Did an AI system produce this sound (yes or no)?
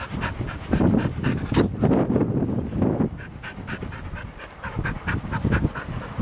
no